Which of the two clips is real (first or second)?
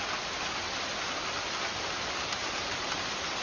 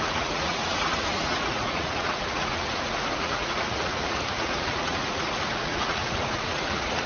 first